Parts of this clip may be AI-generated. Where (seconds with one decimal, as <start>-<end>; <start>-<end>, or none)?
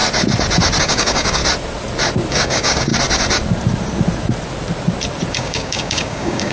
0.8-1.4; 2.3-2.9; 5.3-6.5